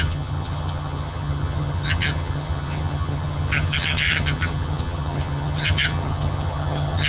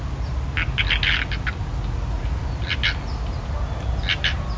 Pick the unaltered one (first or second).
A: second